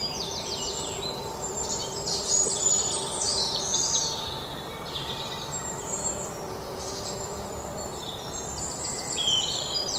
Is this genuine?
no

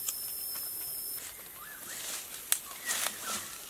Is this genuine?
yes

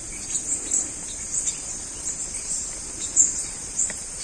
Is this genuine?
no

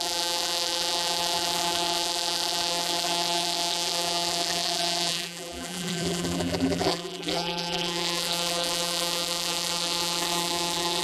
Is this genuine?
no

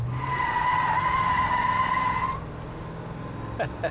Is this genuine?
yes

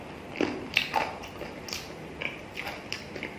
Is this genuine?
yes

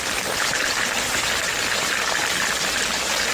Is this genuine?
yes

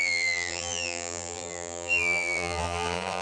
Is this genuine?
no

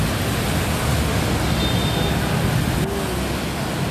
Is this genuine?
yes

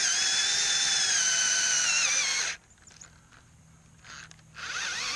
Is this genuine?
yes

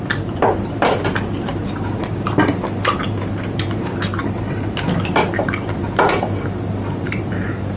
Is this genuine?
no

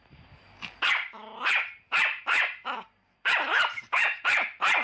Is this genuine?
no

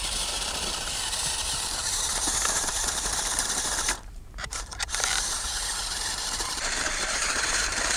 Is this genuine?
no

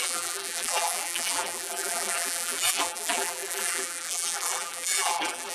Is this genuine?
no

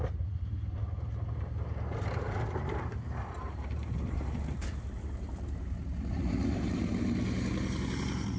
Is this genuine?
no